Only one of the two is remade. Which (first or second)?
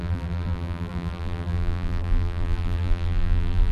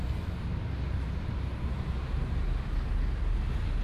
first